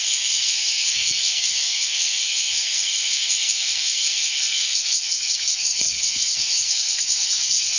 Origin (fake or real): fake